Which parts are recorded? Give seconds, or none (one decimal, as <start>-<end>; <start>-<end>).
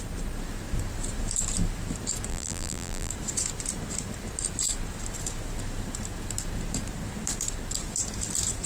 0.0-2.3; 3.1-8.7